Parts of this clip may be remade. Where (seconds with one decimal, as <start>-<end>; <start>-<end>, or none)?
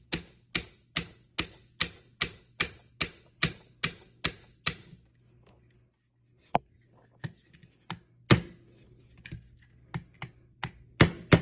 none